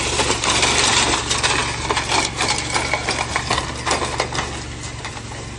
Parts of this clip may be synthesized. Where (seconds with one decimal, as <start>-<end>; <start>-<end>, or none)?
none